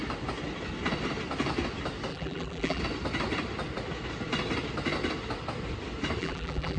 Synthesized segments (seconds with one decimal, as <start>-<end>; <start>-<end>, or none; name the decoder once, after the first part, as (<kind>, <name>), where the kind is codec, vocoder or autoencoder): 2.1-2.8 (vocoder, BigVGAN v2); 6.2-6.8